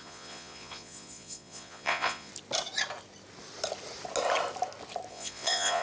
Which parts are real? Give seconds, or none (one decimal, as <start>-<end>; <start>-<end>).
2.3-5.1